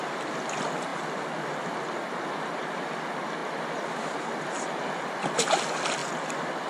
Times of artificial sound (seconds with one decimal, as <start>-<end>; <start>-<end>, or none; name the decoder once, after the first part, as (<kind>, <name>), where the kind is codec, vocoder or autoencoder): none